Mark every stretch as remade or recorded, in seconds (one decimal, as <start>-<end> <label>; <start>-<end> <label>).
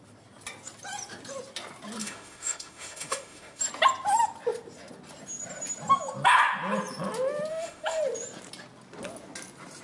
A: 0.0-2.0 recorded; 2.0-3.6 remade; 3.6-7.5 recorded; 7.5-8.0 remade; 8.0-9.8 recorded